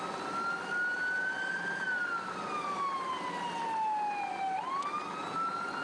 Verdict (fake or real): real